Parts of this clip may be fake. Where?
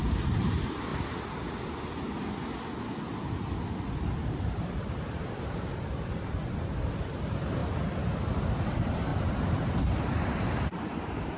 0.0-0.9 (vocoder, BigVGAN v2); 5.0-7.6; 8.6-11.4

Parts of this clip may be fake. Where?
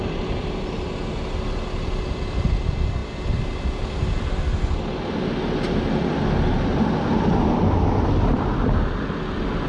none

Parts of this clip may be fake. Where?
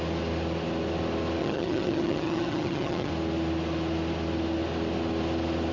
1.4-3.1 (vocoder, HiFi-GAN)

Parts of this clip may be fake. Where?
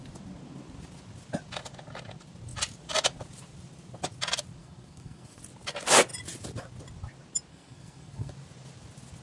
4.6-5.4 (codec, SNAC); 7.5-8.3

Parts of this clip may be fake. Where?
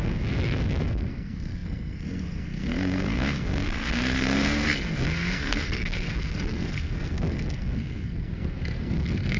0.0-9.4 (codec, SNAC)